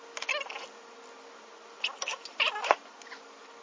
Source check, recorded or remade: recorded